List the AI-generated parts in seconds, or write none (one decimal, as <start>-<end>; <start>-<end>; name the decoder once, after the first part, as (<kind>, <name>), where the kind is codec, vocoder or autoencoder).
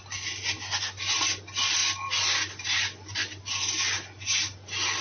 none